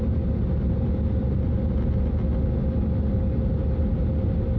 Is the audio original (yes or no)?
yes